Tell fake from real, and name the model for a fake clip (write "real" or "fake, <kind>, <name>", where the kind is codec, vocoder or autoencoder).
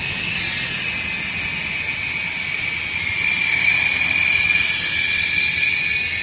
real